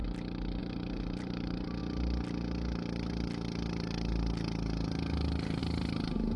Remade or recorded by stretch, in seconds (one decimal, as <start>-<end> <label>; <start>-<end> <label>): 0.0-0.6 recorded; 0.6-1.8 remade; 1.8-5.6 recorded; 5.6-6.4 remade